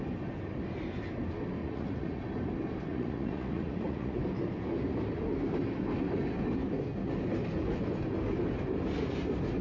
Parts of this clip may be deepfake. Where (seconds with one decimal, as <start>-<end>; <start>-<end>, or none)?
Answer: 1.6-2.2; 2.9-4.2